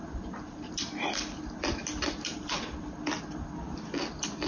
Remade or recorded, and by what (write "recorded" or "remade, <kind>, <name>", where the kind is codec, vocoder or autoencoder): recorded